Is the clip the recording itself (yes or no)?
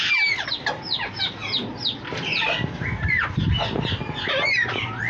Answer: yes